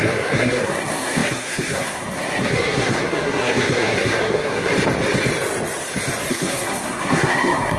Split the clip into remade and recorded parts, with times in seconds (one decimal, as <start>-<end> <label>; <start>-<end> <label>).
0.0-4.7 remade; 4.7-6.3 recorded; 6.3-7.8 remade